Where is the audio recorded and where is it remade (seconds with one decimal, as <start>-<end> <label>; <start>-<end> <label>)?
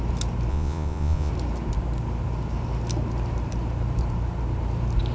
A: 0.0-0.5 recorded; 0.5-1.3 remade; 1.3-5.1 recorded